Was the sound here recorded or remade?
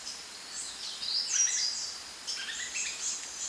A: recorded